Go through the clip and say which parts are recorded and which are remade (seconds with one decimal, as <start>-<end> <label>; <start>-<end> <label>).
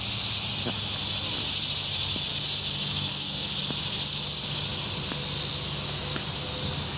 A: 0.0-2.3 recorded; 2.3-3.6 remade; 3.6-7.0 recorded